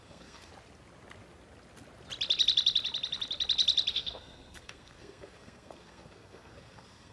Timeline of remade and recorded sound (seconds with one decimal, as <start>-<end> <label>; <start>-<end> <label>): 0.0-0.5 remade; 0.5-3.9 recorded; 3.9-7.1 remade